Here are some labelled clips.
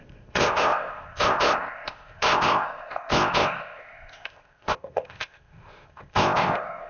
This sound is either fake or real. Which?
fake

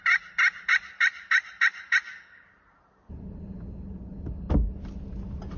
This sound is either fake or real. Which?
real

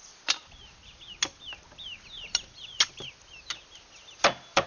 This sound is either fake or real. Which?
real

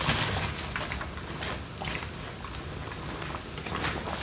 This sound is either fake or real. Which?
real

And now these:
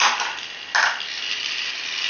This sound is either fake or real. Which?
real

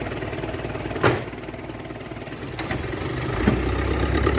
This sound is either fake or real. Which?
real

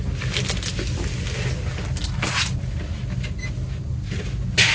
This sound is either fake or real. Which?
real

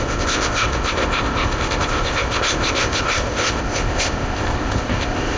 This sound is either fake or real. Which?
fake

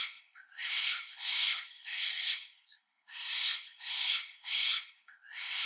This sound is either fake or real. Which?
fake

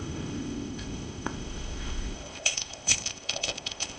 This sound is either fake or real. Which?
fake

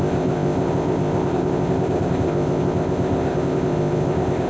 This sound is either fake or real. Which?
fake